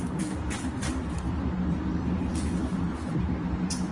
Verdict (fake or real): fake